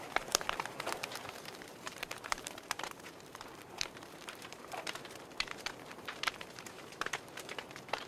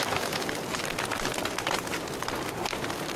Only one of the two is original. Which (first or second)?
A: second